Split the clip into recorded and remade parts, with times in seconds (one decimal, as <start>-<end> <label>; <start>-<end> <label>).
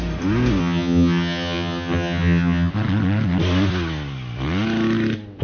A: 0.0-0.6 recorded; 0.6-2.7 remade; 2.7-5.4 recorded